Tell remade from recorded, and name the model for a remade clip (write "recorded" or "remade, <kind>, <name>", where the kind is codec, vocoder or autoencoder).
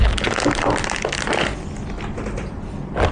recorded